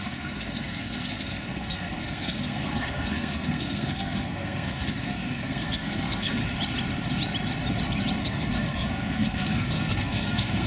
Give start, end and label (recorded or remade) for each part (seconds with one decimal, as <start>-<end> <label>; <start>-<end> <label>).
0.0-6.4 remade; 6.4-8.2 recorded; 8.2-10.7 remade